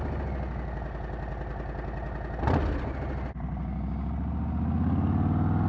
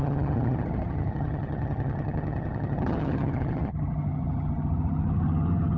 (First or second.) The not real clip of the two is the second